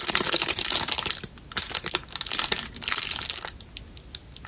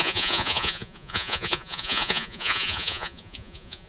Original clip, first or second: first